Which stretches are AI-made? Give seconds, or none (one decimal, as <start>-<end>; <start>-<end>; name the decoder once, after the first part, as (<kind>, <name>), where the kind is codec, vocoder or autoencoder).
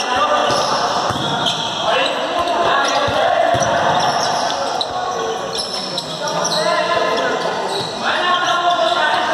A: 0.4-1.2 (vocoder, BigVGAN v2); 3.0-8.2